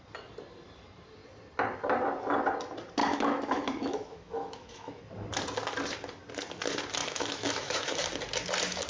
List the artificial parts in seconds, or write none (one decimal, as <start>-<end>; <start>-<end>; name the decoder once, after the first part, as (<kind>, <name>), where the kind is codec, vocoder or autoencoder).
3.0-5.0 (autoencoder, DAC-VAE); 7.0-8.0